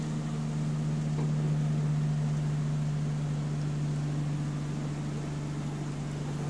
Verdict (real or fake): real